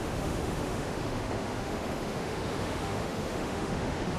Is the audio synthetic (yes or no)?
yes